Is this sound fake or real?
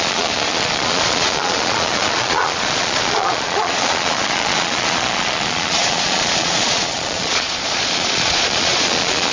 fake